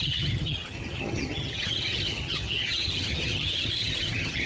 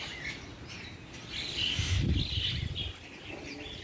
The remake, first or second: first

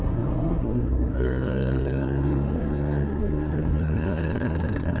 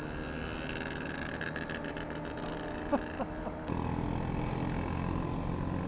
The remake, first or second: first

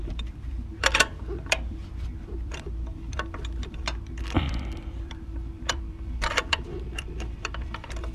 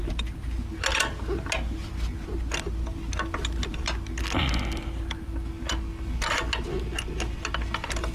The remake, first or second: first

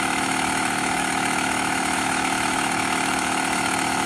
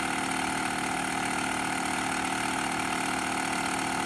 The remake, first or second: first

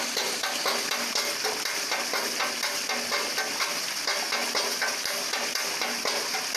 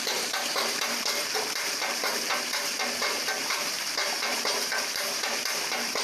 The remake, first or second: second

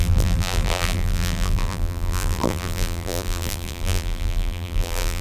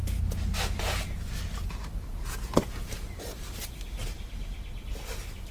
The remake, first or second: first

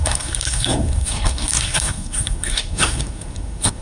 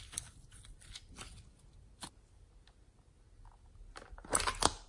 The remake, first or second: first